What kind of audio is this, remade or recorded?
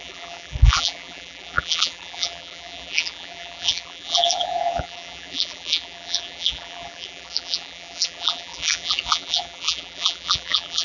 remade